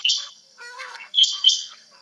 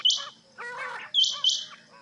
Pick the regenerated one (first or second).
first